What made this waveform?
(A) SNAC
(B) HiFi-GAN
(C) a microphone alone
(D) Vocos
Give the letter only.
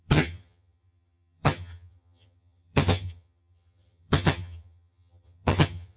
B